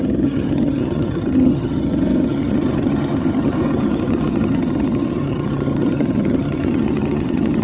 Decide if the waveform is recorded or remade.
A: remade